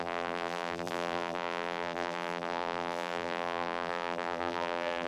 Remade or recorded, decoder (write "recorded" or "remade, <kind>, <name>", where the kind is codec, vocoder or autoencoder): remade, vocoder, BigVGAN v2